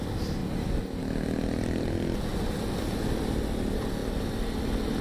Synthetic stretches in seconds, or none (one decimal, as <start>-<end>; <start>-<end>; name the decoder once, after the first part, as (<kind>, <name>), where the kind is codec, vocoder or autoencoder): none